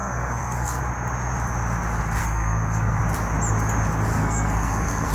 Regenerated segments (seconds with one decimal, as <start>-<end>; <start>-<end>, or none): 0.0-0.8; 2.2-3.0; 4.1-5.1